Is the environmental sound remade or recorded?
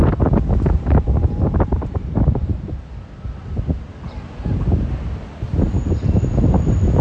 recorded